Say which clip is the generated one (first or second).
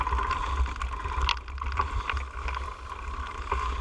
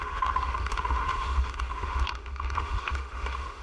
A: second